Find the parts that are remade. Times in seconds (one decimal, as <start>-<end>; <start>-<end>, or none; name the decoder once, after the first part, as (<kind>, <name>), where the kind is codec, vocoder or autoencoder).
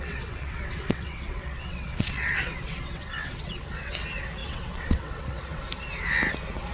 0.0-3.9 (vocoder, WaveNeXt); 4.4-5.6